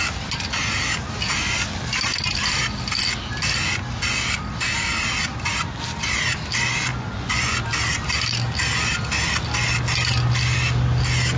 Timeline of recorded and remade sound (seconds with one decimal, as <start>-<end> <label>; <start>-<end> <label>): 0.0-6.9 recorded; 6.9-7.6 remade; 7.6-11.4 recorded